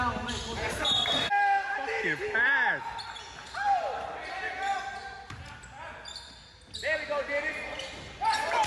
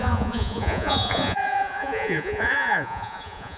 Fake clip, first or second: second